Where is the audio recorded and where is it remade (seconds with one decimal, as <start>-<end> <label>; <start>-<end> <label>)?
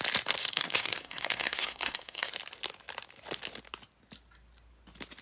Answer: 0.0-0.4 recorded; 0.4-2.3 remade; 2.3-5.2 recorded